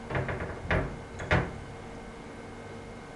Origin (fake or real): real